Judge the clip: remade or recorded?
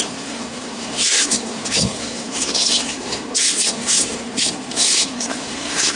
remade